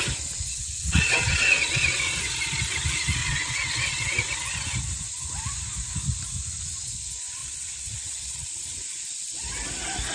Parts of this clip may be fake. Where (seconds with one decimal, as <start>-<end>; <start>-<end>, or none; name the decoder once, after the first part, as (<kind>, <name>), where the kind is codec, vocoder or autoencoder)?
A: 0.5-2.2 (vocoder, WaveNeXt); 3.2-4.3; 7.4-8.5